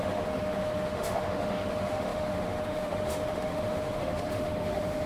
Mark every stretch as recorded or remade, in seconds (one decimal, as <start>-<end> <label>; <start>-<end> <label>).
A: 0.0-5.1 remade